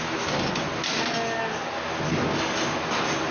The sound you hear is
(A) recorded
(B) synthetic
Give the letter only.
A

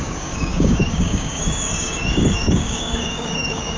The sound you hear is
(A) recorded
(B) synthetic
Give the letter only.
B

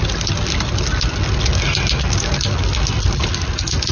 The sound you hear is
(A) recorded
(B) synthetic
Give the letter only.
A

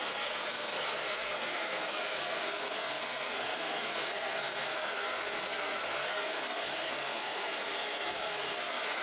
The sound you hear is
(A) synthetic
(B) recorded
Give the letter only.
A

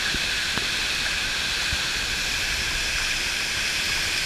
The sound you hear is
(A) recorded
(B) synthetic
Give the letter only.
A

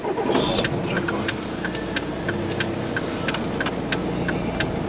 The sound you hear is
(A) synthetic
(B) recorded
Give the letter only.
B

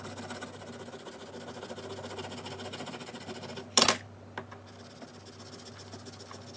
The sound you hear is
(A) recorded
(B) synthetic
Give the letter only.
A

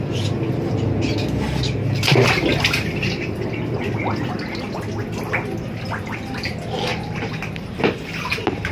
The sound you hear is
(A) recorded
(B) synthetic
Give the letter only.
A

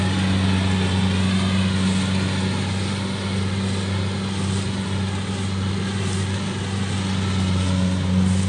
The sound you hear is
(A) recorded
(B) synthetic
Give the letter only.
A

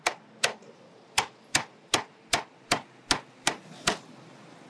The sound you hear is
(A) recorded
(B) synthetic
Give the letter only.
A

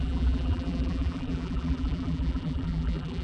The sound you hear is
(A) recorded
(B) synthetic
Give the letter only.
B